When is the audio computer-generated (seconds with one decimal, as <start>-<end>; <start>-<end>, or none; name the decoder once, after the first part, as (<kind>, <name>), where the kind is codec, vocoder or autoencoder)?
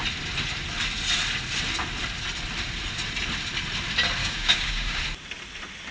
4.2-5.0 (codec, DAC)